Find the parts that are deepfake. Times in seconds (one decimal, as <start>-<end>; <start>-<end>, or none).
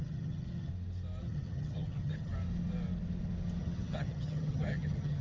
0.0-0.7; 1.2-2.3; 3.6-5.2